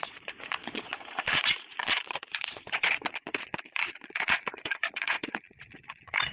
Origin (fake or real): fake